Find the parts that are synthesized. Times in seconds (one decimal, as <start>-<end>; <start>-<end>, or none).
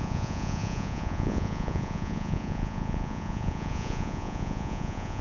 0.0-5.2